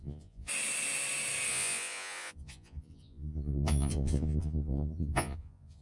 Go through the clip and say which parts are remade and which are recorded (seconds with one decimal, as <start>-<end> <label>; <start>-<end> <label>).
0.0-0.5 remade; 0.5-1.5 recorded; 1.5-5.8 remade